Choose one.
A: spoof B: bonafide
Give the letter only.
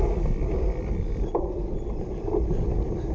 B